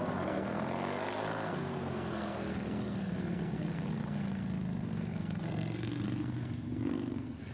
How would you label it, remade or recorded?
remade